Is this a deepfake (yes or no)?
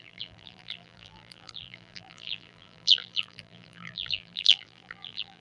yes